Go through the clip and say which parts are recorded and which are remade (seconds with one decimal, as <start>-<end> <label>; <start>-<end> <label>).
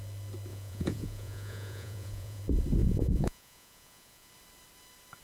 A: 0.0-0.5 recorded; 0.5-2.4 remade; 2.4-2.8 recorded; 2.8-4.3 remade; 4.3-5.2 recorded